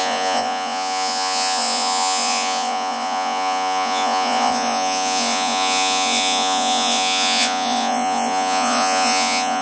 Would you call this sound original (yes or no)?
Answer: no